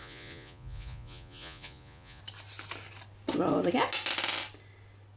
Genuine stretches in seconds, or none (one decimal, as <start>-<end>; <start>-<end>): 2.2-5.2